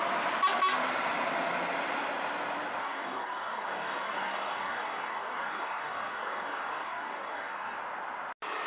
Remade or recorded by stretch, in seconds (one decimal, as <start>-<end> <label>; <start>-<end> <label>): 0.0-2.8 recorded; 2.8-7.8 remade; 7.8-8.7 recorded